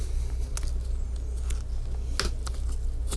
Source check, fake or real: real